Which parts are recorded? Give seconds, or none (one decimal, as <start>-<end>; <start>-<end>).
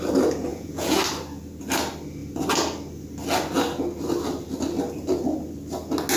0.0-0.5; 1.0-6.2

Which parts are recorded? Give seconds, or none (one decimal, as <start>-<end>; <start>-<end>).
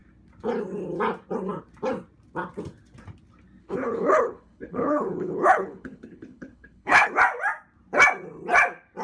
0.0-3.6; 7.1-9.0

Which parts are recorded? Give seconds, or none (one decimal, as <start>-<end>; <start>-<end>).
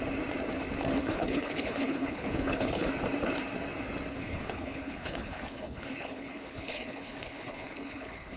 0.0-1.0; 2.9-4.1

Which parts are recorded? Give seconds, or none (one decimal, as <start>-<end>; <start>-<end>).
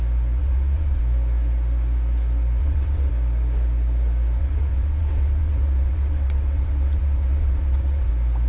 0.0-0.4; 1.0-2.6; 3.1-4.4; 8.1-8.5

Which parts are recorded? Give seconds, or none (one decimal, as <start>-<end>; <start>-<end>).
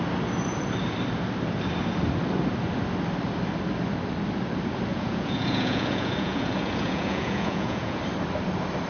0.0-4.9; 8.0-8.9